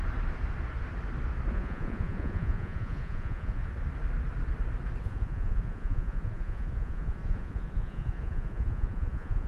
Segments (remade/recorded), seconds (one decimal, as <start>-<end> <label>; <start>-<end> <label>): 0.0-1.5 recorded; 1.5-3.6 remade; 3.6-5.0 recorded; 5.0-9.5 remade